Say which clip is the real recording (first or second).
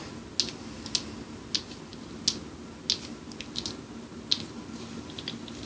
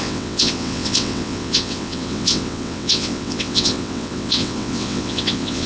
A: first